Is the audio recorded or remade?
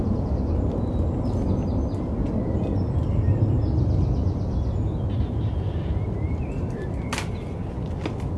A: recorded